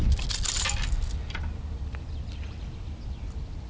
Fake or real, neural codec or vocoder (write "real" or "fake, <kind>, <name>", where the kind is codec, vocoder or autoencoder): real